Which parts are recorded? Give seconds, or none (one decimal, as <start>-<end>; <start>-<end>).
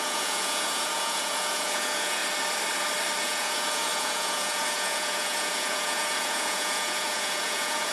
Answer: 2.2-3.2